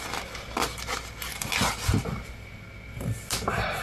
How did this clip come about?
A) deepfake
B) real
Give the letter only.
B